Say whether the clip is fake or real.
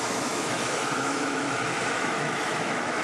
fake